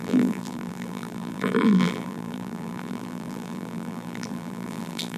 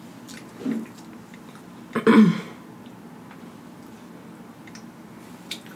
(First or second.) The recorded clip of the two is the second